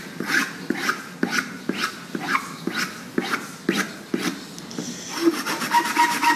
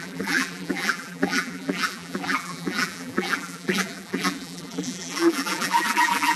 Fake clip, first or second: second